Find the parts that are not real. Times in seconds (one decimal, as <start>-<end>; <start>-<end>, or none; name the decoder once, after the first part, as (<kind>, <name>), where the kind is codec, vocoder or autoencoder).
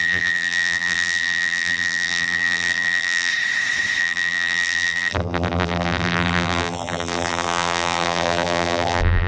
0.0-3.3 (vocoder, BigVGAN v2); 4.0-9.3